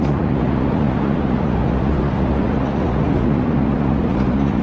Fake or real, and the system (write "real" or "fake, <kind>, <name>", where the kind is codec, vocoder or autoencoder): fake, vocoder, Vocos